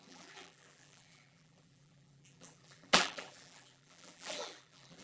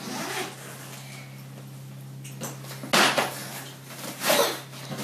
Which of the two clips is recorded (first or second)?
second